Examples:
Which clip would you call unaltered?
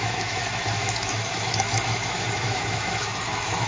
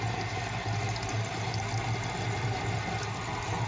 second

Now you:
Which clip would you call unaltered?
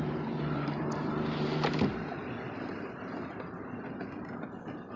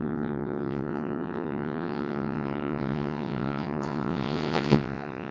first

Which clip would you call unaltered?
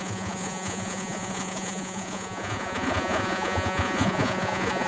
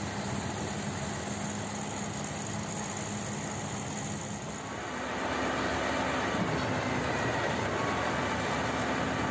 second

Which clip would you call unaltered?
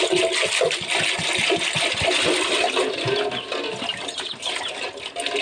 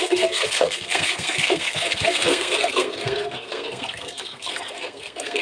first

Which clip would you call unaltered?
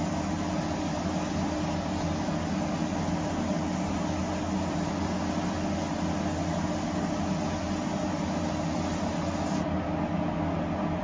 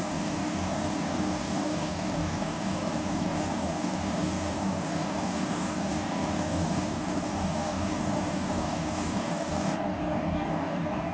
first